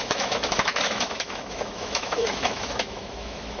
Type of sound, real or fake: fake